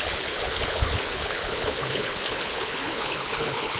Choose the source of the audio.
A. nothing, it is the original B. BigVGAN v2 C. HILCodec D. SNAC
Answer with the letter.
C